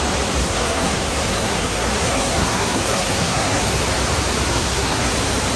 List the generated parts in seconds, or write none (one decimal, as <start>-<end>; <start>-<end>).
0.4-3.8; 4.5-5.1